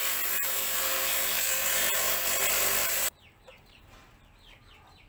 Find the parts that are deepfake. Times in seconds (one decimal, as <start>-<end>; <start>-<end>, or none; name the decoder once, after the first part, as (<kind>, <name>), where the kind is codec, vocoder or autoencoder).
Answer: 0.4-2.2 (vocoder, BigVGAN v2); 2.8-3.8